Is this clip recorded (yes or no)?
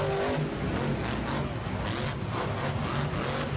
yes